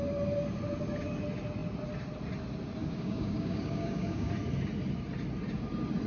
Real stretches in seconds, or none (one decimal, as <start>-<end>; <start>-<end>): 0.0-2.8; 4.3-6.1